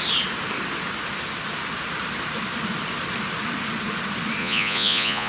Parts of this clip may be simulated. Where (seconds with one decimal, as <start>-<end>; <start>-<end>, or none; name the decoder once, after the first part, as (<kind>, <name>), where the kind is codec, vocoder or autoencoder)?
4.4-5.3 (vocoder, Vocos)